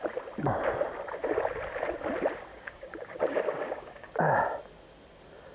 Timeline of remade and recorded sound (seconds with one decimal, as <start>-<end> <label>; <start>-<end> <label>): 0.0-2.5 recorded; 2.5-4.1 remade; 4.1-5.5 recorded